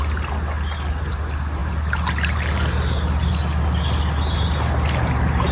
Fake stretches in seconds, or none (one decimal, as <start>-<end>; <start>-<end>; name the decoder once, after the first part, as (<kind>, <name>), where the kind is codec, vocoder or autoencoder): none